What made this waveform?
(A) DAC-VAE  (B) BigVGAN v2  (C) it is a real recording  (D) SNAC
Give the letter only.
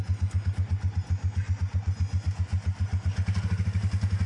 C